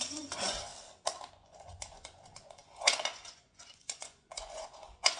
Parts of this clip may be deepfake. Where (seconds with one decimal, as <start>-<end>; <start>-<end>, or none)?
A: 0.0-0.7; 1.3-5.2